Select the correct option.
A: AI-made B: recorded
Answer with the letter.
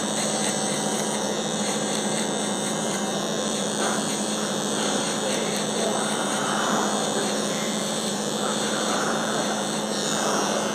A